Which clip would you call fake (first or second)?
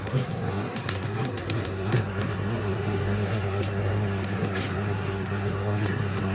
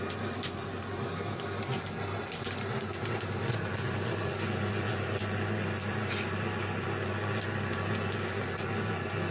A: first